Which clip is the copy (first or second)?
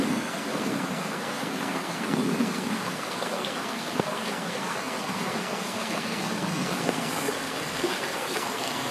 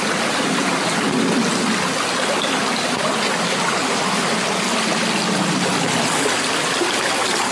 first